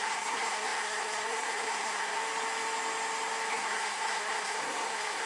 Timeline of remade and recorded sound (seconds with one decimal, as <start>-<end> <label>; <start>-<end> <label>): 0.0-2.2 remade; 2.2-3.5 recorded; 3.5-5.3 remade